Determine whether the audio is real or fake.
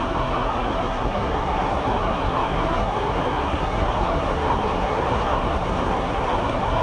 fake